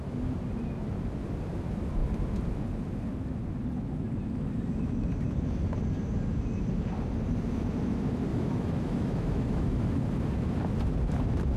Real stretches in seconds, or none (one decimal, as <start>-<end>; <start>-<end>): 0.0-8.3; 9.9-11.6